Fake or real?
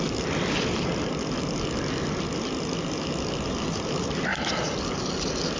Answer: real